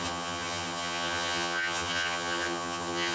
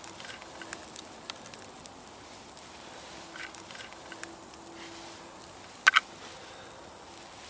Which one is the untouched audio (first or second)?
second